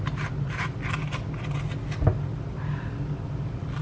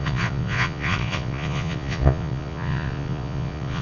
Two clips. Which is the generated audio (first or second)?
second